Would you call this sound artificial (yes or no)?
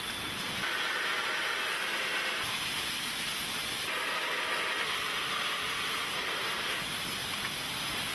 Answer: no